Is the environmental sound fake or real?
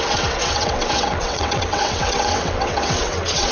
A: fake